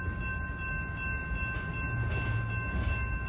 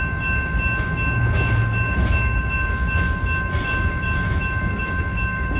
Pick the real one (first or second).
first